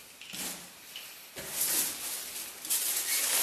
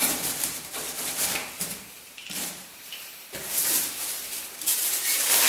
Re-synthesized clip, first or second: second